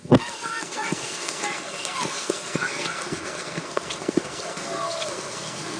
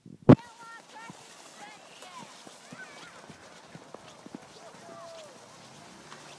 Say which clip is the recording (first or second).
second